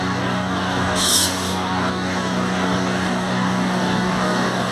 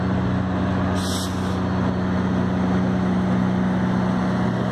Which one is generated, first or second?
first